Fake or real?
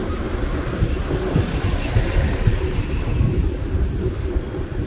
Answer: real